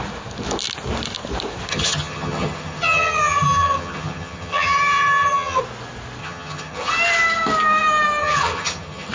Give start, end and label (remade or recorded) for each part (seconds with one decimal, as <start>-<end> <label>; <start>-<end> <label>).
0.0-1.7 recorded; 1.7-5.6 remade; 5.6-6.2 recorded; 6.2-6.9 remade; 6.9-8.2 recorded; 8.2-9.1 remade